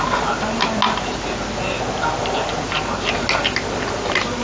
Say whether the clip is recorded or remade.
recorded